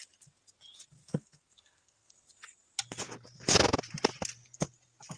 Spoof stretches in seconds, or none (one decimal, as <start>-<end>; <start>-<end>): 1.0-2.1